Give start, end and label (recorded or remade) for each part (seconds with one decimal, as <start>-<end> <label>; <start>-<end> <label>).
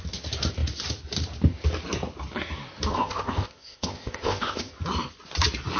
0.0-2.9 recorded; 2.9-4.7 remade; 4.7-5.8 recorded